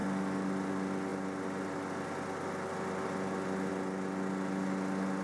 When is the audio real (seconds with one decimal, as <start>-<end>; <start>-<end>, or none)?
0.0-5.2